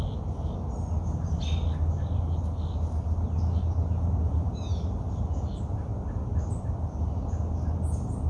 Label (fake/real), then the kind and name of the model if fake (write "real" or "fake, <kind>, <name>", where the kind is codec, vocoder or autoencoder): real